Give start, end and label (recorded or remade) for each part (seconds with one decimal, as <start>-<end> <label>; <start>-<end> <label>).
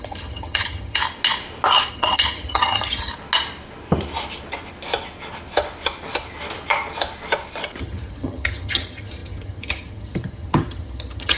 0.0-1.0 remade; 1.0-1.9 recorded; 1.9-3.1 remade; 3.1-7.8 recorded; 7.8-11.4 remade